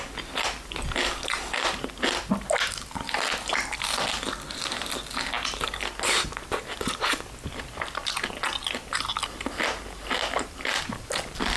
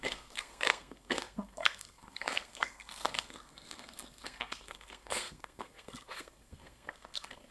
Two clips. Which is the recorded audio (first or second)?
first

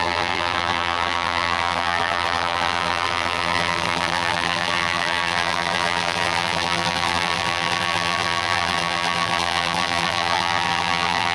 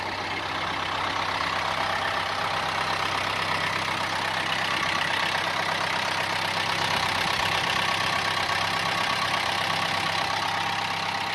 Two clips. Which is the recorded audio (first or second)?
second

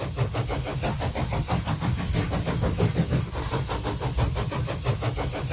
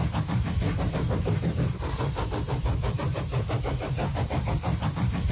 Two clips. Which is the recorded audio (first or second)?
first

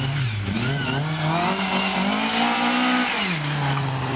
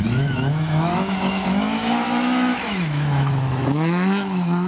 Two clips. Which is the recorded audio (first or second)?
first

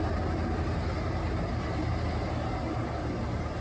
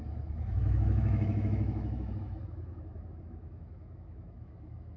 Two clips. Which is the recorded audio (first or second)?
first